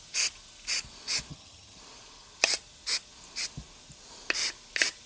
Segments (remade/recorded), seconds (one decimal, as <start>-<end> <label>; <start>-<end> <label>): 0.0-1.3 recorded; 1.3-1.8 remade; 1.8-5.1 recorded